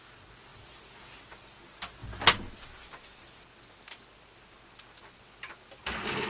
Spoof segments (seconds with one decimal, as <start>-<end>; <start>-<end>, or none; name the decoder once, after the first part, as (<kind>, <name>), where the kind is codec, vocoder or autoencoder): none